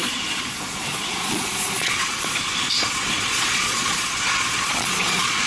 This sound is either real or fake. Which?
fake